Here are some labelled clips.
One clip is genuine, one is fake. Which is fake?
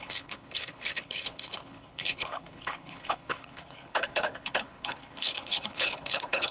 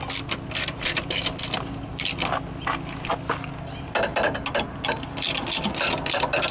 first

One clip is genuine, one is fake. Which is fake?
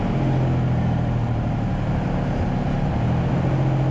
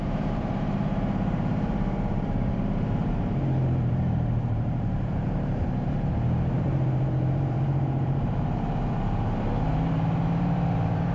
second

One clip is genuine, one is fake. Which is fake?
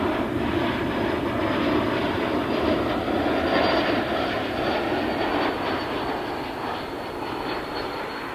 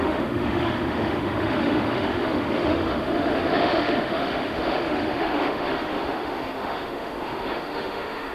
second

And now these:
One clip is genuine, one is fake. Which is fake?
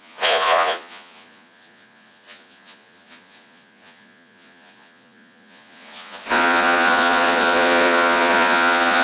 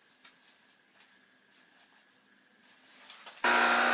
first